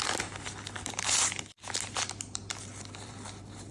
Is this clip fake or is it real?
fake